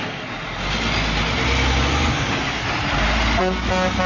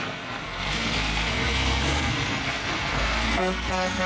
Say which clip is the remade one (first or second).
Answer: second